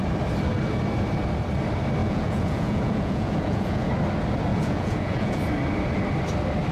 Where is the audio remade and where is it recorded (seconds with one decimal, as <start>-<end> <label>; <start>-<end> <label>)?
0.0-2.0 recorded; 2.0-3.9 remade; 3.9-4.5 recorded; 4.5-5.4 remade; 5.4-6.7 recorded